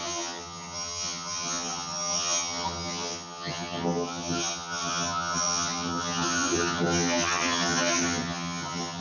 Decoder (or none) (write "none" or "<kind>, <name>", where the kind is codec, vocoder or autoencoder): vocoder, HiFi-GAN